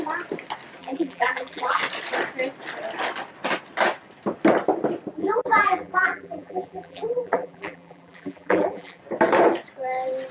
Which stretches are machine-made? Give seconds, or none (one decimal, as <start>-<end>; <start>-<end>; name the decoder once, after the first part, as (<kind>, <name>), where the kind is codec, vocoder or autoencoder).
0.8-1.8 (vocoder, BigVGAN v2); 5.2-9.0